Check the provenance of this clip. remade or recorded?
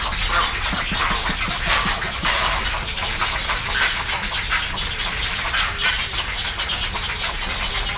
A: recorded